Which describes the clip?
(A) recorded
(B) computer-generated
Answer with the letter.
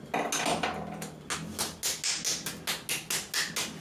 A